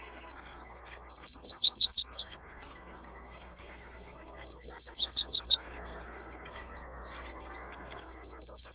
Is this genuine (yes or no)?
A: no